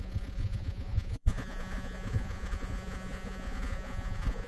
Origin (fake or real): fake